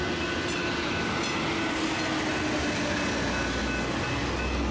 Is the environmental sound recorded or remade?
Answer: recorded